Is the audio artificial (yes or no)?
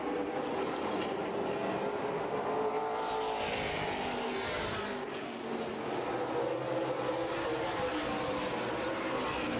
no